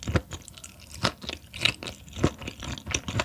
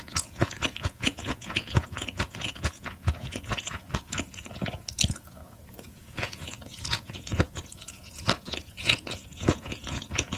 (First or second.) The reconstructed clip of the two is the second